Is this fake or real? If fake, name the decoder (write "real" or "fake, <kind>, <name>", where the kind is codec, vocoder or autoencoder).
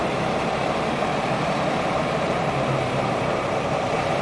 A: fake, vocoder, BigVGAN v2